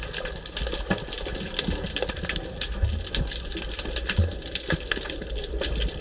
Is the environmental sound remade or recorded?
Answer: recorded